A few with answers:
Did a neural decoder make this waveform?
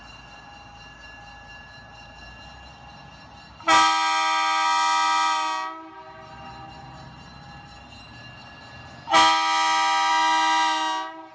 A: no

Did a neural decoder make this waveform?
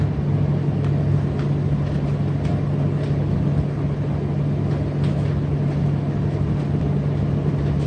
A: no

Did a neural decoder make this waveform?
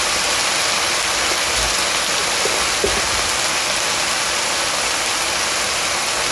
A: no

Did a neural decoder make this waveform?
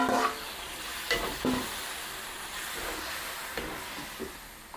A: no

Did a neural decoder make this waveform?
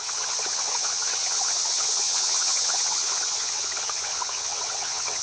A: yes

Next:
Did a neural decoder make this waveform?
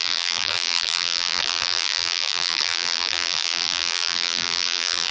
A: yes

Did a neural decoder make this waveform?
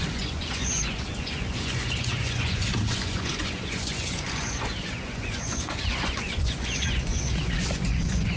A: yes